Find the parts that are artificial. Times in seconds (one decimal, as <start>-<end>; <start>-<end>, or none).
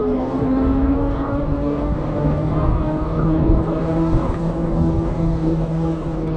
0.0-6.4